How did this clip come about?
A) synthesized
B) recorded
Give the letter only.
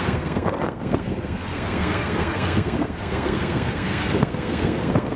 A